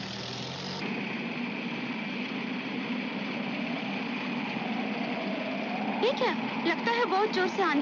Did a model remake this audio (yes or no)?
no